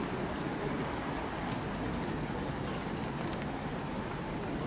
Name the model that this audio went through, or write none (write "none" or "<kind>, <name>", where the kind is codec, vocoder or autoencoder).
none